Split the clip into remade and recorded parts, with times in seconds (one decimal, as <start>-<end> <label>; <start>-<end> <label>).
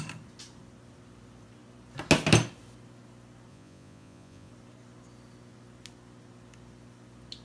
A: 0.0-3.5 recorded; 3.5-4.5 remade; 4.5-7.4 recorded